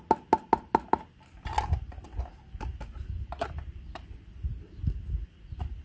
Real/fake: real